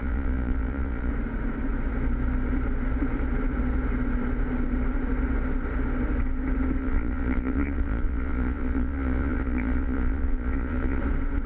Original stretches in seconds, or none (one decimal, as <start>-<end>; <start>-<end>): 1.1-6.8; 11.0-11.5